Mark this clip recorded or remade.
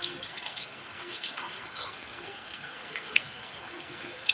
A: remade